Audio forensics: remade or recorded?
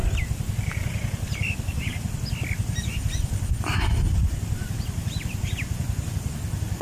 recorded